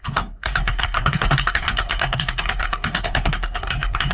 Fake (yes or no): yes